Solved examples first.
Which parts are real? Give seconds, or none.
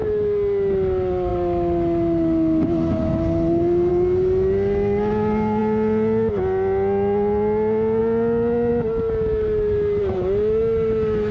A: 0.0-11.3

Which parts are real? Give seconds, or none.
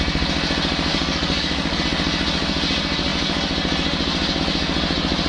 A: 0.0-0.9; 1.8-5.3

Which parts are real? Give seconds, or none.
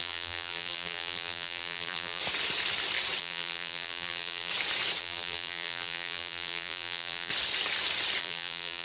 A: 2.2-3.2; 4.5-5.0; 7.3-8.2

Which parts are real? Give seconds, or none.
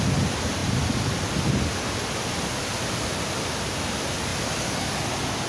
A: 0.0-5.5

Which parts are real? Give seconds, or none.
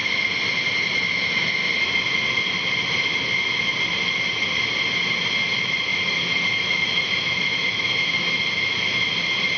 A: 0.0-5.9; 8.4-9.6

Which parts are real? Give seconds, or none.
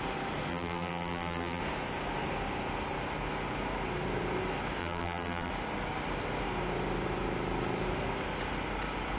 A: 0.0-0.5; 1.6-4.8; 5.5-9.2